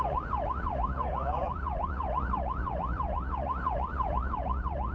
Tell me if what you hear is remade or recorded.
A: remade